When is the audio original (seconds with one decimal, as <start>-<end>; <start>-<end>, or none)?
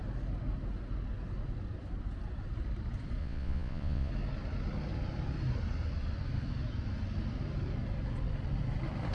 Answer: 0.0-3.2; 4.1-9.1